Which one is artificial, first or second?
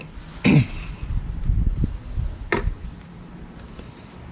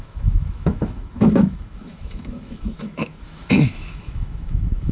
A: second